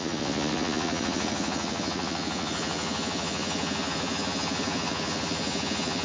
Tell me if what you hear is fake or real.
fake